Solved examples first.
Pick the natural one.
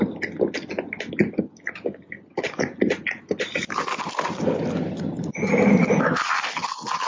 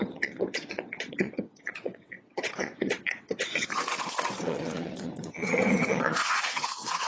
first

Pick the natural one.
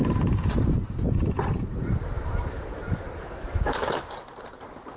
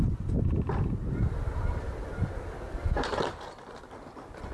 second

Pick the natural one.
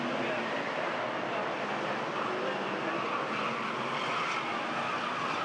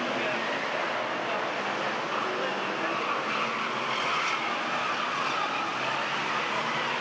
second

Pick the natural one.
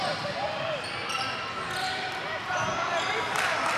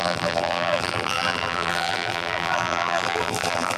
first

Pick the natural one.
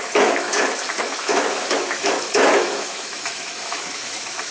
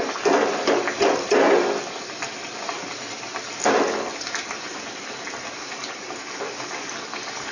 second